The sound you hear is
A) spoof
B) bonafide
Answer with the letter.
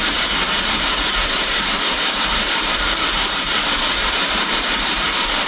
A